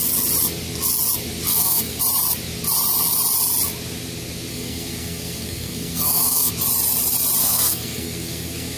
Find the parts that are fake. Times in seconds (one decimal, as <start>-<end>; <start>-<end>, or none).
1.5-2.0; 4.5-6.5; 7.4-8.8